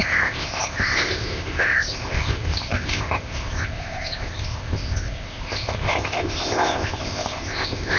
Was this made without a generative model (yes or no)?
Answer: no